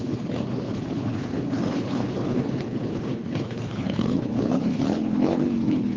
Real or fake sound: fake